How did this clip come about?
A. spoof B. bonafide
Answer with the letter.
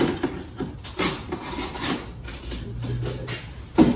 B